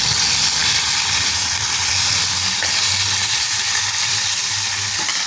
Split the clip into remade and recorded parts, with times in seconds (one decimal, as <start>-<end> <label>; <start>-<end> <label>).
0.0-0.6 recorded; 0.6-2.2 remade; 2.2-3.2 recorded; 3.2-5.3 remade